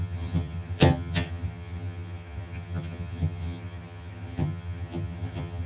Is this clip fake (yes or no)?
yes